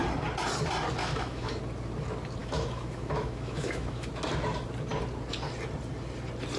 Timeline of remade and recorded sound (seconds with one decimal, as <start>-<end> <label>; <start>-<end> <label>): 0.0-1.0 recorded; 1.0-1.6 remade; 1.6-2.4 recorded; 2.4-4.1 remade; 4.1-6.6 recorded